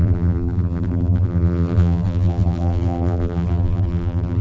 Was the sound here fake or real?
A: fake